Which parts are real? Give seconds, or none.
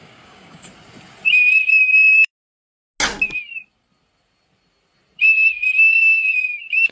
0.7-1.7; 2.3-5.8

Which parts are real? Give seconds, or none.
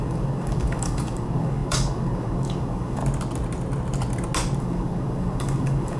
3.0-4.6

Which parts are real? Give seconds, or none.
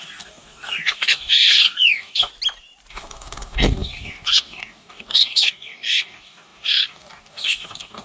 2.3-2.9